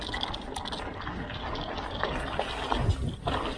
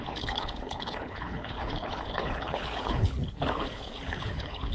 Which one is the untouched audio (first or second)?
first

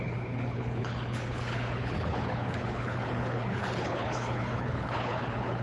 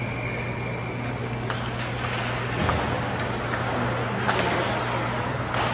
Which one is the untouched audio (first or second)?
second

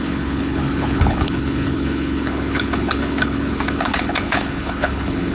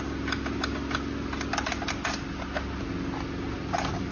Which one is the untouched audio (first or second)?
second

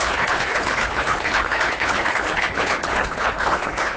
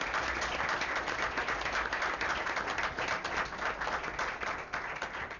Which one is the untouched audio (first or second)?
second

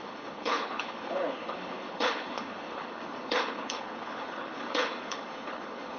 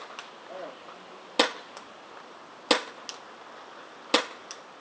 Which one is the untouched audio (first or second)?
second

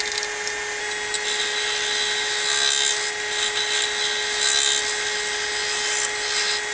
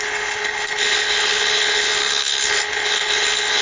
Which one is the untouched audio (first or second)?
first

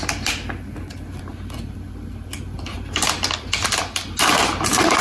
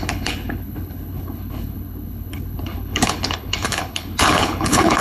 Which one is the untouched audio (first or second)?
first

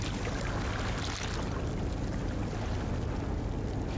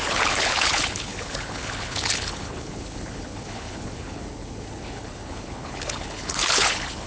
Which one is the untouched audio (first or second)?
first